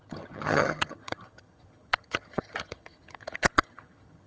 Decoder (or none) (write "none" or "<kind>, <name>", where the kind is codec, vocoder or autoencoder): vocoder, HiFi-GAN